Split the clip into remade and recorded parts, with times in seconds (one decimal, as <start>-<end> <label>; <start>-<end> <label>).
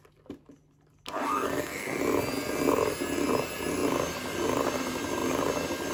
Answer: 0.0-1.2 recorded; 1.2-2.0 remade; 2.0-5.9 recorded